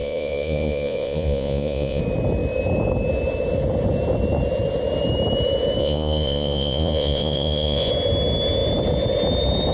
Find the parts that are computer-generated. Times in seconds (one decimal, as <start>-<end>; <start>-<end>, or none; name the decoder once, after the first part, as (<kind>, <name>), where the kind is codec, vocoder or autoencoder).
0.0-2.0 (vocoder, Vocos); 5.8-7.9